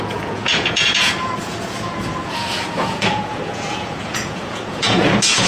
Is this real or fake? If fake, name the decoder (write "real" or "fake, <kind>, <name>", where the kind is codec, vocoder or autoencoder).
fake, vocoder, Vocos